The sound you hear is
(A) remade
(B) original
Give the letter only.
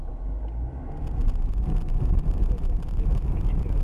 B